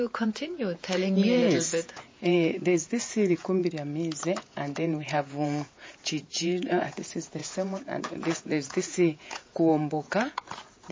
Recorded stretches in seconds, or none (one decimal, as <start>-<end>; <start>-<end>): 3.6-4.4